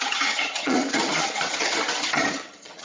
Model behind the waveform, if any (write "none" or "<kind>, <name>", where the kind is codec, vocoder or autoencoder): vocoder, HiFi-GAN